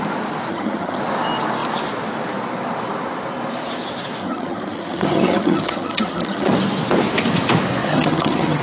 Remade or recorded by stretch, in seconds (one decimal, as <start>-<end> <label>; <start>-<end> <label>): 0.0-0.5 recorded; 0.5-1.0 remade; 1.0-4.2 recorded; 4.2-6.5 remade; 6.5-7.8 recorded; 7.8-8.6 remade